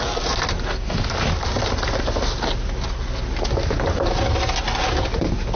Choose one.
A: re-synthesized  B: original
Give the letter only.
B